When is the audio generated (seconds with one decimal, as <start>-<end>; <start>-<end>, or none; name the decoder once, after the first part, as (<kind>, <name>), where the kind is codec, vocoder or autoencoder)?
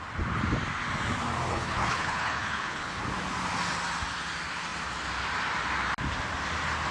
1.5-3.0 (codec, HILCodec)